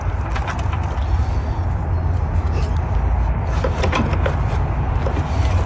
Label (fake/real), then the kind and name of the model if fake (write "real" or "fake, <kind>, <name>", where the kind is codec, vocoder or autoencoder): real